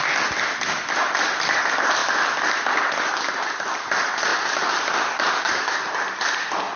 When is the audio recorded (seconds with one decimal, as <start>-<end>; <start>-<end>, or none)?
0.0-6.8